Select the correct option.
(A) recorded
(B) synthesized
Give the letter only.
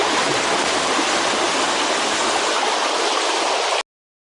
A